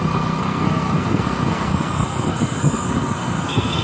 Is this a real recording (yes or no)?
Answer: no